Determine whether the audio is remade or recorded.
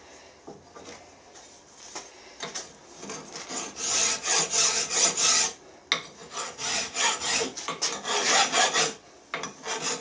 recorded